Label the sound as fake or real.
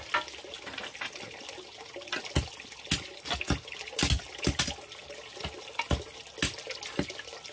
real